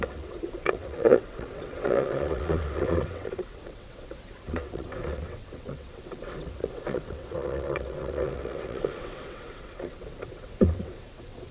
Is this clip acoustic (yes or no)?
no